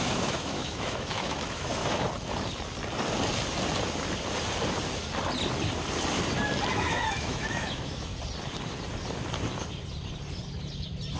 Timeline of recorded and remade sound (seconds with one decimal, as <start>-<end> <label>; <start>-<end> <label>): 0.0-1.8 remade; 1.8-6.7 recorded; 6.7-8.1 remade; 8.1-11.2 recorded